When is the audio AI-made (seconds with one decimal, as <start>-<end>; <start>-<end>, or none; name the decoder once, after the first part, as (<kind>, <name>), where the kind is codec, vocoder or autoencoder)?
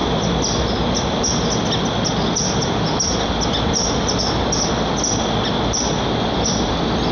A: none